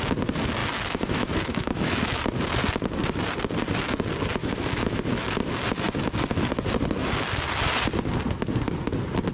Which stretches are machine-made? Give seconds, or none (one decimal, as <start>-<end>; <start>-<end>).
0.6-2.2; 4.4-5.5